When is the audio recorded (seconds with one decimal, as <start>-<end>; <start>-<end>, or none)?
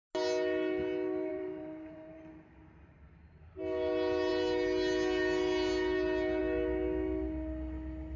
0.0-1.3; 2.2-8.2